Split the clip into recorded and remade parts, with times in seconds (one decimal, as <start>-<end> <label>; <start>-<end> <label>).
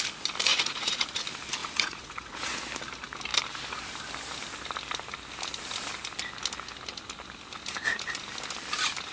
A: 0.0-0.5 recorded; 0.5-1.2 remade; 1.2-1.6 recorded; 1.6-2.6 remade; 2.6-9.1 recorded